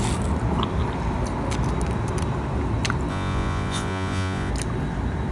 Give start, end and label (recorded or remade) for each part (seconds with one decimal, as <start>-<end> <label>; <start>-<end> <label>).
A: 0.0-3.1 recorded; 3.1-4.5 remade; 4.5-5.3 recorded